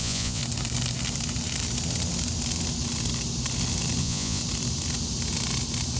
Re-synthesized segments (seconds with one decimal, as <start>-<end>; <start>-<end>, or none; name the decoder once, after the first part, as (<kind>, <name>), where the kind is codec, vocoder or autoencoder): 0.0-0.4 (vocoder, Vocos); 4.0-4.4